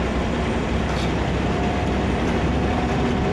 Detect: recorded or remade remade